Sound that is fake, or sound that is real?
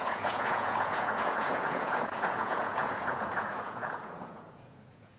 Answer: fake